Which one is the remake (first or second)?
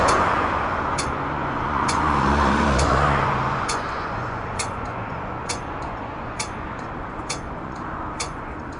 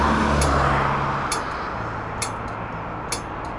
first